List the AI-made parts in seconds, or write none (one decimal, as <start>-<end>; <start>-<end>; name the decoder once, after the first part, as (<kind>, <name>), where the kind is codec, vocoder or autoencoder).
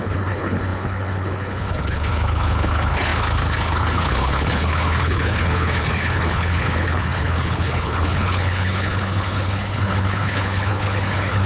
0.0-11.5 (codec, HILCodec)